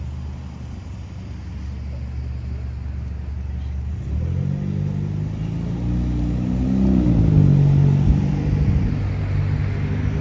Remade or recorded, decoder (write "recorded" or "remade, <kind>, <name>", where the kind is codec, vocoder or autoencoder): recorded